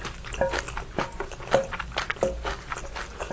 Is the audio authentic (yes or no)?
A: yes